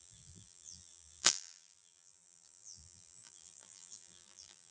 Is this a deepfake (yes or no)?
yes